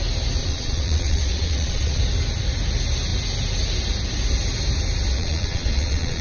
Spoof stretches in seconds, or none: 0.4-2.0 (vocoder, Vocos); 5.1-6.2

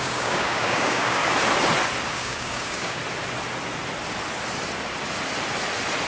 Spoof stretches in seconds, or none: 0.0-1.2 (codec, DAC); 2.1-3.0

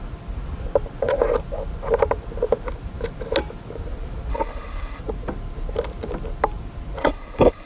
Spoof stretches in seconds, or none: 4.3-5.0 (codec, HILCodec); 7.0-7.7

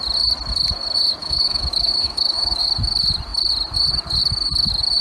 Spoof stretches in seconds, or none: 1.2-2.7 (autoencoder, DAC-VAE)

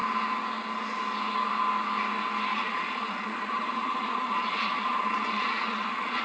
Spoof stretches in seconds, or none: 2.5-6.2 (vocoder, Vocos)